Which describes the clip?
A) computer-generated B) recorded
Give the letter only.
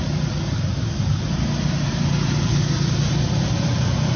B